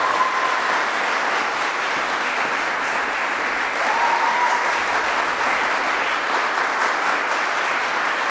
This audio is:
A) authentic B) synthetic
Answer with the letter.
A